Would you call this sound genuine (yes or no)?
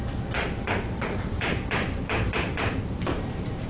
no